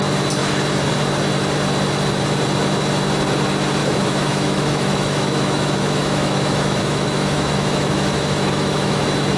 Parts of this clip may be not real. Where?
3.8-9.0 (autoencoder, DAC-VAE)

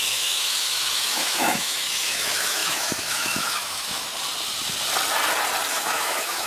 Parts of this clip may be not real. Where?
0.0-4.1 (autoencoder, DAC-VAE); 5.7-6.5

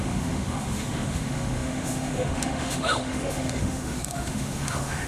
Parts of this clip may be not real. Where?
0.0-5.1 (autoencoder, DAC-VAE)

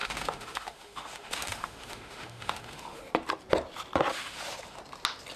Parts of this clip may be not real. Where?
0.0-3.0 (autoencoder, DAC-VAE); 4.1-4.8

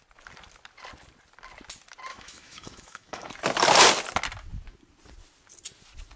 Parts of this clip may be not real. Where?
2.1-3.3 (autoencoder, DAC-VAE)

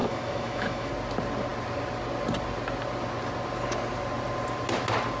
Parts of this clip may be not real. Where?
0.0-0.9 (autoencoder, DAC-VAE)

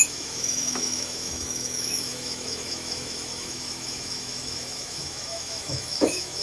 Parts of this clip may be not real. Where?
0.0-6.4 (autoencoder, DAC-VAE)